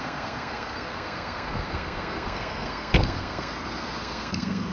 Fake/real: fake